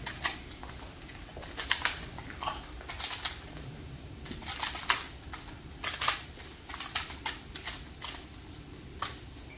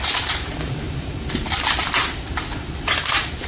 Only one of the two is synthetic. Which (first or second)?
second